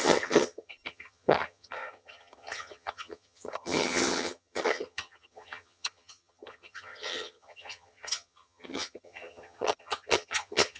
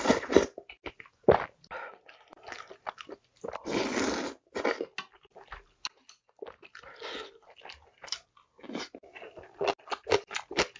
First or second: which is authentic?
second